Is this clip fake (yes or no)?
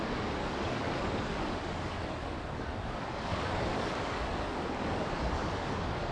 yes